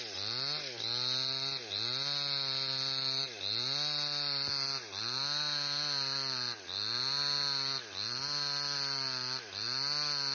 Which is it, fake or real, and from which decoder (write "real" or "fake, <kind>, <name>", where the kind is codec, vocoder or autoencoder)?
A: real